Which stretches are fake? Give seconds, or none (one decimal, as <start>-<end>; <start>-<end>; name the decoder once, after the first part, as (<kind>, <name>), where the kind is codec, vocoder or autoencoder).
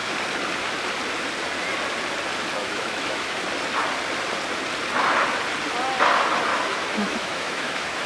2.6-3.4 (autoencoder, DAC-VAE); 6.5-8.1